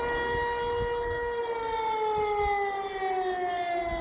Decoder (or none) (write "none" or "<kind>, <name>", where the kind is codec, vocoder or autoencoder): none